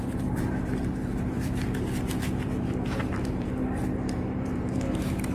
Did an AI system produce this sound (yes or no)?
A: yes